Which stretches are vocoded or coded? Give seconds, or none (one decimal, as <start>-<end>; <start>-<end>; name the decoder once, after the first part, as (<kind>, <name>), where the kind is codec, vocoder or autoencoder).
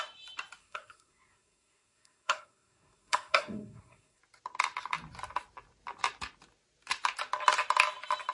0.6-4.2 (codec, SNAC)